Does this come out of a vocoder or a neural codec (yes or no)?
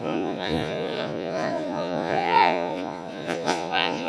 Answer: yes